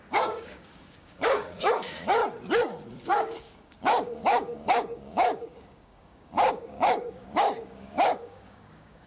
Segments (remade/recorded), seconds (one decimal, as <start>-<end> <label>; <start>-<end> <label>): 0.0-2.2 remade; 2.2-3.0 recorded; 3.0-9.1 remade